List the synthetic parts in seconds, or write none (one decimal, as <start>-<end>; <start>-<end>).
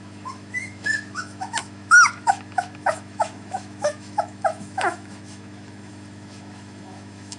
0.0-7.4